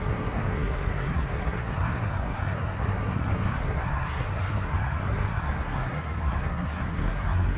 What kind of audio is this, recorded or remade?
remade